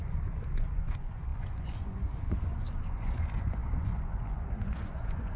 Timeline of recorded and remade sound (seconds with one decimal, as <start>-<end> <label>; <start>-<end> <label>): 0.0-5.4 remade